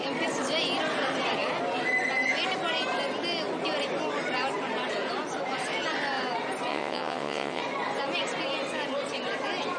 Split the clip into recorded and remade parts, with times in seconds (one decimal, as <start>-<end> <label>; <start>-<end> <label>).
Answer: 0.0-6.7 recorded; 6.7-7.6 remade; 7.6-9.8 recorded